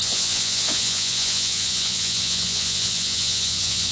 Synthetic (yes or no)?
yes